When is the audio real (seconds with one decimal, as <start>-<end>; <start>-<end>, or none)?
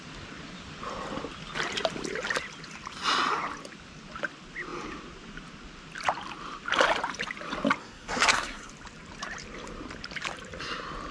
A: 0.0-7.8; 8.7-11.1